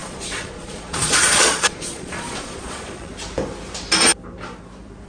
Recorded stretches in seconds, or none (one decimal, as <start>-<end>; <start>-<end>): 3.1-5.1